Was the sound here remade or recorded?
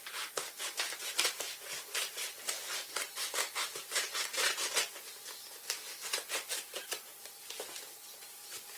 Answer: recorded